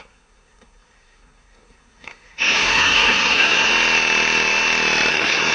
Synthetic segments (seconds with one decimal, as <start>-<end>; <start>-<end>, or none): 0.0-3.7; 5.1-5.5